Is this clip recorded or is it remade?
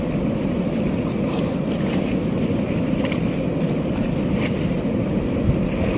recorded